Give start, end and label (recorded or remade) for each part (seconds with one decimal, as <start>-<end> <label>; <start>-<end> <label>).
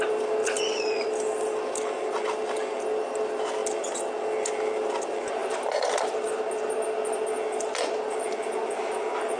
0.0-0.4 recorded; 0.4-1.1 remade; 1.1-9.4 recorded